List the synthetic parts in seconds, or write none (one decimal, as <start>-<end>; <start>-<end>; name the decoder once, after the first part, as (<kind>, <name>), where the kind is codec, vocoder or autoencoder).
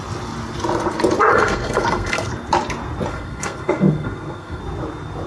1.3-2.3 (codec, SNAC); 3.1-4.6